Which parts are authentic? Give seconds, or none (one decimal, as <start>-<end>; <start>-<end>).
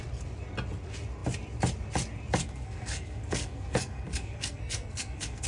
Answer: 0.0-2.4